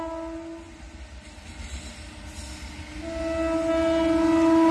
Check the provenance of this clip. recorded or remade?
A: recorded